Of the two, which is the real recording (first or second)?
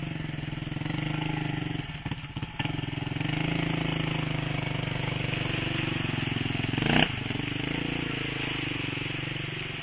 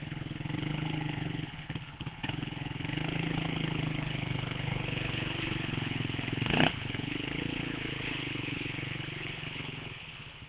first